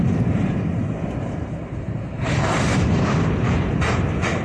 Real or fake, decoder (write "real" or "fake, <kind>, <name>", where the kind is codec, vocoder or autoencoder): fake, vocoder, BigVGAN v2